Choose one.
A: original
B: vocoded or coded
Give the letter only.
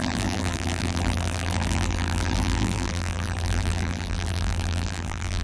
B